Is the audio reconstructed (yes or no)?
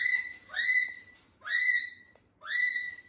no